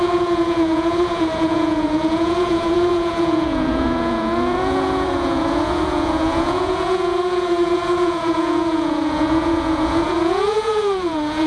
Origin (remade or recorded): remade